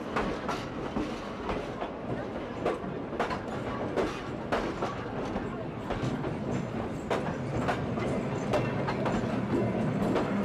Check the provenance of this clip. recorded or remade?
recorded